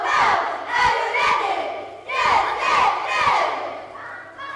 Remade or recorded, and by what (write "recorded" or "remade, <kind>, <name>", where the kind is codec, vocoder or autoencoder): recorded